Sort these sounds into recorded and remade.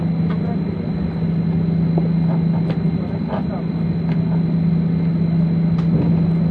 recorded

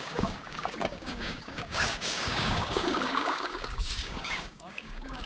remade